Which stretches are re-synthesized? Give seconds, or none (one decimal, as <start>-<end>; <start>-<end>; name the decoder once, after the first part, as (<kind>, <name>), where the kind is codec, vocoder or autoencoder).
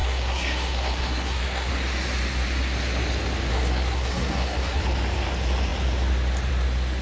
0.0-1.7 (codec, SNAC); 3.5-4.8